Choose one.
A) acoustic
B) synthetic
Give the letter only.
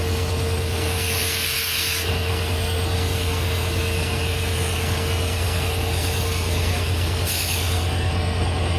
B